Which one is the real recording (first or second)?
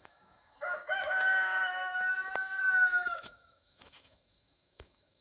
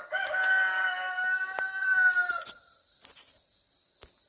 second